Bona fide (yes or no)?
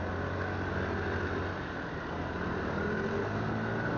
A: yes